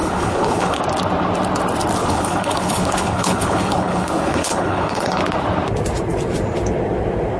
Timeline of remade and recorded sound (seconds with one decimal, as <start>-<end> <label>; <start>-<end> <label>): 0.0-0.8 remade; 0.8-2.0 recorded; 2.0-5.2 remade; 5.2-7.4 recorded